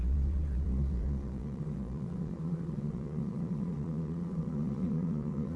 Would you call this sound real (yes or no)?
no